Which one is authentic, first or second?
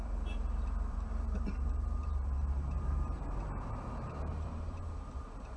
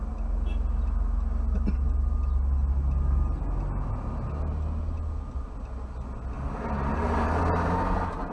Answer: second